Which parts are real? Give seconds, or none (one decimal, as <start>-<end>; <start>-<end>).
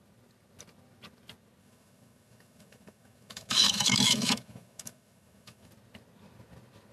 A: 0.0-1.6; 5.7-6.9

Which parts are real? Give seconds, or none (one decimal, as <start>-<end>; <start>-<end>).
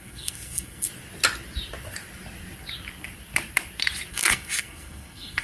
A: 0.9-4.1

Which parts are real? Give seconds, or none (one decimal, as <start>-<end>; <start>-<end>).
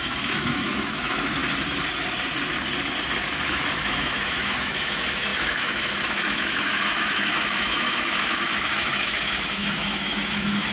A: 1.4-3.5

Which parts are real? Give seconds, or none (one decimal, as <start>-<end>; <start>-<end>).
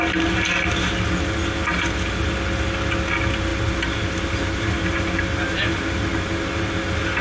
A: 0.0-7.2